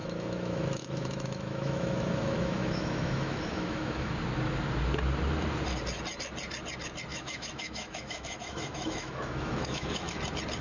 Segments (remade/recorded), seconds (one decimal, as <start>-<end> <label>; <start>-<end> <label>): 0.0-4.1 remade; 4.1-7.1 recorded; 7.1-10.2 remade; 10.2-10.6 recorded